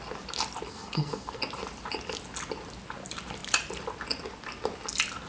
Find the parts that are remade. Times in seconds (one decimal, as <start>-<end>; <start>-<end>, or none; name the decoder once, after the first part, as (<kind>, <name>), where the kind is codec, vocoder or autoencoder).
0.7-1.4 (codec, SNAC)